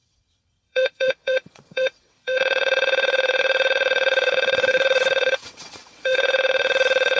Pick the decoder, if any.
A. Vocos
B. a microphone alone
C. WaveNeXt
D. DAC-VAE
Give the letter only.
C